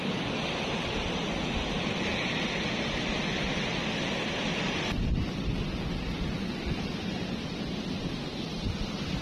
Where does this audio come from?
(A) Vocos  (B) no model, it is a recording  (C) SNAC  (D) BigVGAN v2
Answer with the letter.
B